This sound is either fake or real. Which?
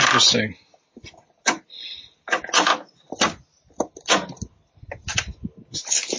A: real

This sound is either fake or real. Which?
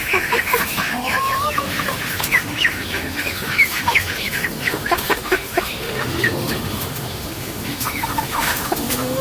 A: fake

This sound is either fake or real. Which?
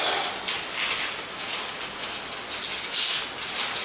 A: real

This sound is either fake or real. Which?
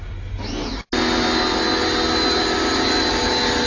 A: real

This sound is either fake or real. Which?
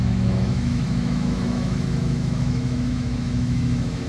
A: fake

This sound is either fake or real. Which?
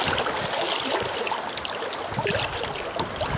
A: real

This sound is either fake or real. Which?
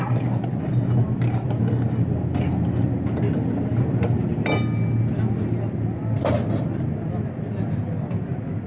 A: real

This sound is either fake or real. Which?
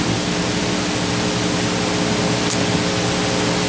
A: real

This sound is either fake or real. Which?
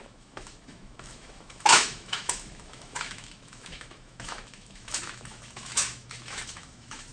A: fake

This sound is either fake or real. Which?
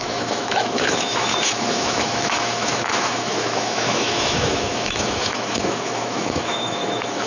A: fake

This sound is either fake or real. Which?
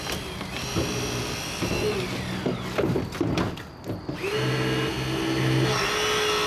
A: real